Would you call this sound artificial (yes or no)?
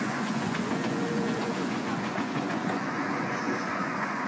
yes